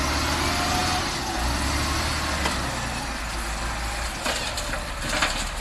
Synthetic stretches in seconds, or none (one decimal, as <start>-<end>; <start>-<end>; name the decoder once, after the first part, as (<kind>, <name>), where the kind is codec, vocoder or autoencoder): none